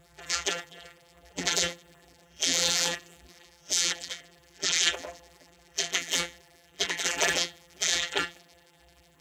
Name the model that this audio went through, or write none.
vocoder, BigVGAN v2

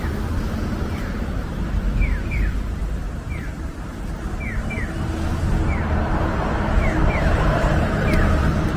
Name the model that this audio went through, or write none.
vocoder, BigVGAN v2